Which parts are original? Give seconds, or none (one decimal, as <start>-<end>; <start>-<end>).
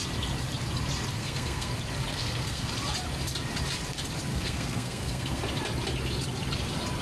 0.0-1.2; 1.7-2.1; 2.7-4.3; 5.4-7.0